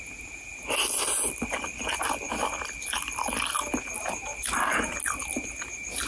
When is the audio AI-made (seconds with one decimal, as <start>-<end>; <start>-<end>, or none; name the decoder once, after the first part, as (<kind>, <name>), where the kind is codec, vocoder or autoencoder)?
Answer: none